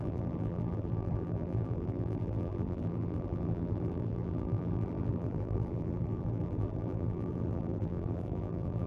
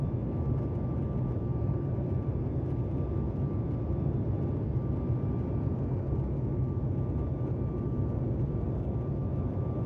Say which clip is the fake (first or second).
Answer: first